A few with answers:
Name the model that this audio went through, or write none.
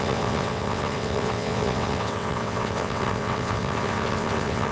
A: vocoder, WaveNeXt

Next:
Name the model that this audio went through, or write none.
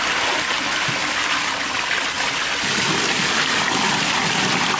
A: none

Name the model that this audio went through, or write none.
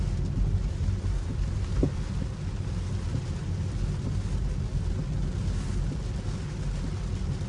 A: none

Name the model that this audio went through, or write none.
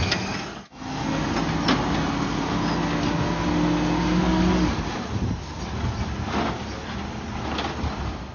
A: none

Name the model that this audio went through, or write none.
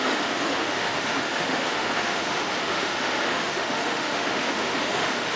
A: autoencoder, DAC-VAE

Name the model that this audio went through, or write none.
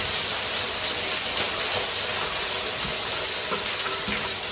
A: none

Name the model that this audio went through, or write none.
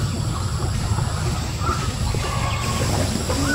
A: none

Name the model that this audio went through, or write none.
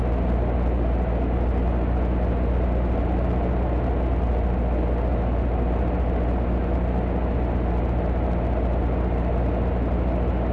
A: none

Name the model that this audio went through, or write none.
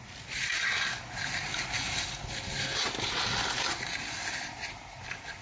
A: none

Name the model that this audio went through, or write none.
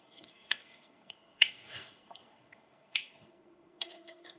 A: codec, SNAC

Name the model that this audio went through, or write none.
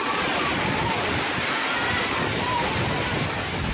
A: none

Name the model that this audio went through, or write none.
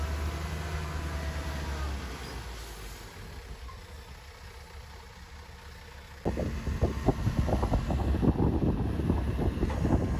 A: none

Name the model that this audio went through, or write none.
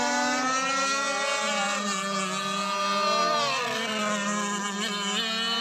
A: none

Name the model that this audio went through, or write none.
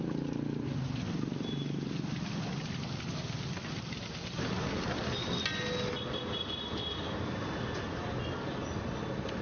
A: none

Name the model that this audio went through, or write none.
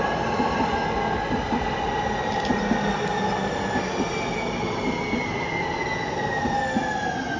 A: none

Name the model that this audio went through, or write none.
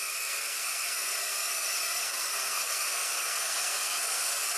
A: codec, SNAC